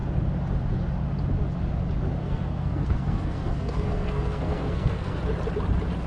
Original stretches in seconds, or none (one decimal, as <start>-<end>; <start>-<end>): 0.0-2.2; 5.2-6.1